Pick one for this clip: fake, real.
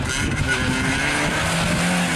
real